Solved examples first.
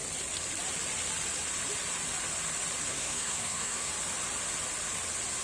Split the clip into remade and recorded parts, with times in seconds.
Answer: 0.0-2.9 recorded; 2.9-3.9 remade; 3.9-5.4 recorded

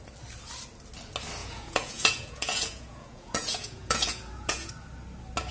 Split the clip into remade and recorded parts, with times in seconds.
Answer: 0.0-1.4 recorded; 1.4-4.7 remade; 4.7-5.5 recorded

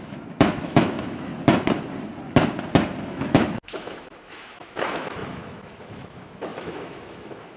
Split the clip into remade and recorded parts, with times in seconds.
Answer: 0.0-1.3 remade; 1.3-3.1 recorded; 3.1-7.6 remade